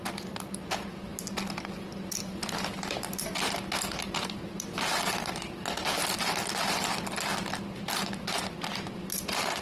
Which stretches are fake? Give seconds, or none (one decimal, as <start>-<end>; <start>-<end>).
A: none

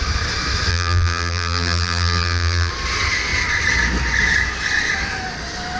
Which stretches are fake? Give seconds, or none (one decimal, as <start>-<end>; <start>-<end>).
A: 0.7-2.7

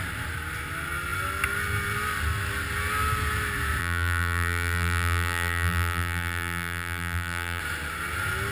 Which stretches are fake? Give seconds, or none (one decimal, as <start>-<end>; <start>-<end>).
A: 3.8-7.6